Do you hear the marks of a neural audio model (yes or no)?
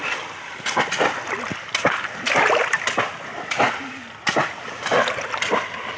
no